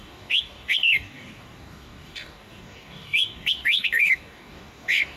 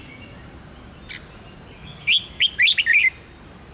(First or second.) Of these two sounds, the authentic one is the second